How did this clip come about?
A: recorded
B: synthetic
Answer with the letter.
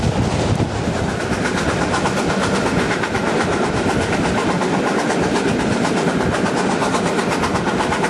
A